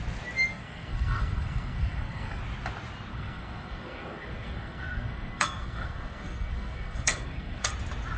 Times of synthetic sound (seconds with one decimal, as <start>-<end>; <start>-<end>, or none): 0.5-2.4; 3.1-7.7